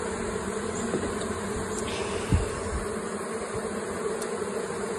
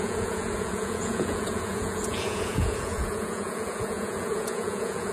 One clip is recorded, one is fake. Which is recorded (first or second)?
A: first